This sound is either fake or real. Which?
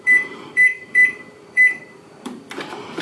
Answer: fake